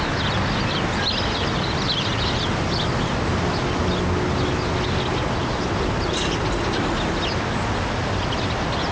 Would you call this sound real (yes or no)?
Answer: yes